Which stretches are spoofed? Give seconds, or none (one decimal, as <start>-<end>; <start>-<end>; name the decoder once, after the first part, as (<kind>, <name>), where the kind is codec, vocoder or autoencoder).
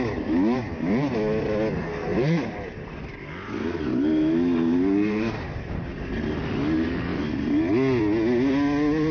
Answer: 2.1-2.9 (vocoder, BigVGAN v2); 3.9-6.2